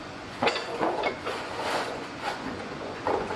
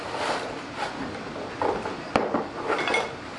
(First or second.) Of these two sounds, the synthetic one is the first